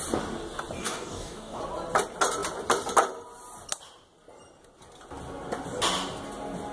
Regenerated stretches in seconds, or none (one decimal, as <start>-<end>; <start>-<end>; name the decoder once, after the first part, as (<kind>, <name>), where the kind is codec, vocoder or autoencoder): 0.8-1.6 (codec, DAC)